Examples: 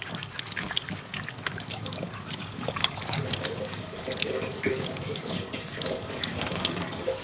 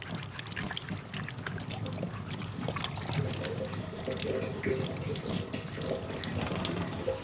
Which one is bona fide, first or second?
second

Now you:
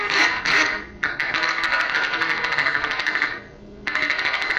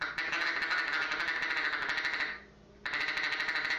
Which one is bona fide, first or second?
second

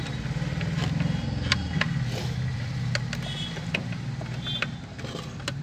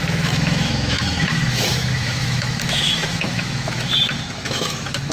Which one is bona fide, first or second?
first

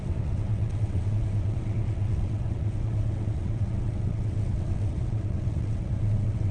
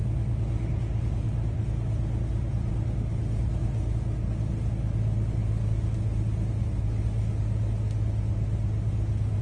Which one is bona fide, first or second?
second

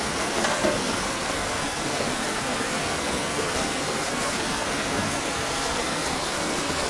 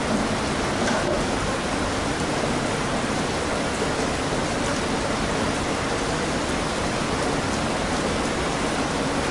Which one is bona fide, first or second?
second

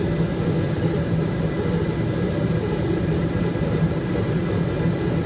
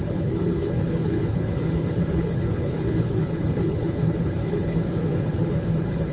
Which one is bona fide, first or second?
first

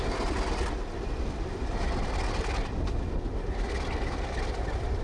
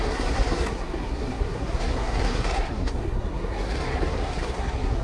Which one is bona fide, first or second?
first